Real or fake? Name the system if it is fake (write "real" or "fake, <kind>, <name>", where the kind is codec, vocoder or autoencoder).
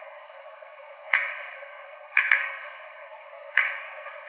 fake, codec, SNAC